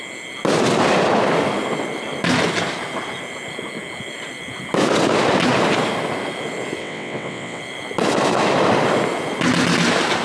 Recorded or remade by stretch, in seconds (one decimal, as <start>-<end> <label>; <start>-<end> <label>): 0.0-6.8 recorded; 6.8-7.6 remade; 7.6-10.2 recorded